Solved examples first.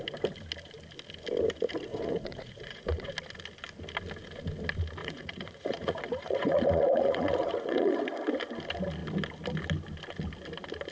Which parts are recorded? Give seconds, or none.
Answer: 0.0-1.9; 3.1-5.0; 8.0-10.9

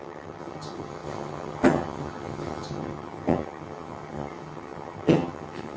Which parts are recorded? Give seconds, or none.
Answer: none

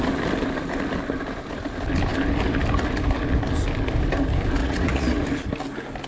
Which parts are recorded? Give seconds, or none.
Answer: 0.0-4.6; 5.2-6.1

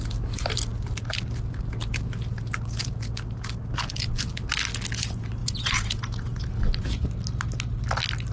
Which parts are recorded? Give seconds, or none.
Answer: 0.0-5.4; 6.5-8.3

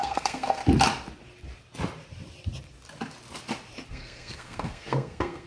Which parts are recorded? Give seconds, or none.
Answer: 0.6-3.9

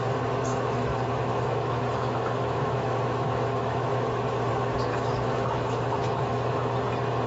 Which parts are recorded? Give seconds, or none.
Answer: 0.0-0.5; 4.5-4.9; 6.8-7.3

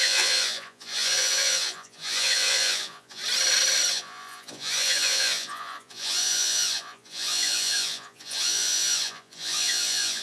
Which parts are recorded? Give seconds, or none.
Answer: 3.2-3.9

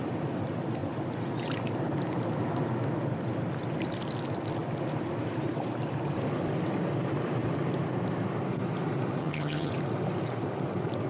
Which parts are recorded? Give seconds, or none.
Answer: 0.0-9.2; 9.7-11.1